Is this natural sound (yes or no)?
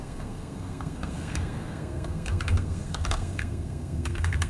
no